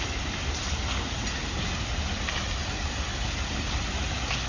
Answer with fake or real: real